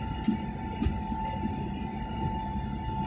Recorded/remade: recorded